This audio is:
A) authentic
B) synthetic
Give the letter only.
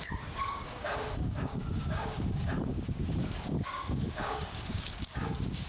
B